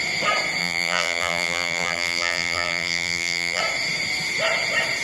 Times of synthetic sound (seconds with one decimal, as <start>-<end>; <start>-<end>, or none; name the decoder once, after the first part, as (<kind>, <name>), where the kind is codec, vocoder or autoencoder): 0.6-3.6 (vocoder, BigVGAN v2)